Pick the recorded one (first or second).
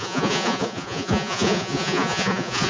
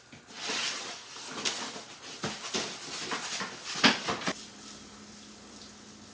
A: second